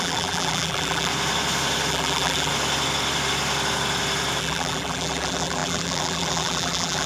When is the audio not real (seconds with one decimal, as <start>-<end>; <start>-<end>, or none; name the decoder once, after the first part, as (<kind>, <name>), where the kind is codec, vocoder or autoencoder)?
0.0-1.1 (vocoder, BigVGAN v2); 1.9-2.5; 4.4-7.1